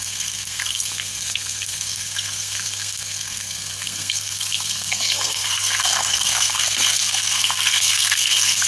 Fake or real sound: fake